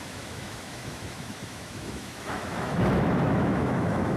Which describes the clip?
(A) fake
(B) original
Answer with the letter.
A